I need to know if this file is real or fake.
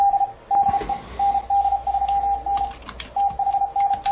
real